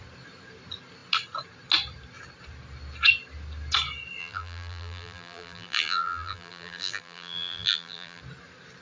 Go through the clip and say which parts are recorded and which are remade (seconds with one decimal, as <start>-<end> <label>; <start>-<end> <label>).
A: 0.0-4.2 recorded; 4.2-8.2 remade; 8.2-8.8 recorded